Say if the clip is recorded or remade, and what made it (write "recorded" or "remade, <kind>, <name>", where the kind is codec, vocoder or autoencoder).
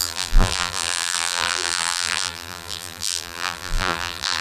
remade, vocoder, BigVGAN v2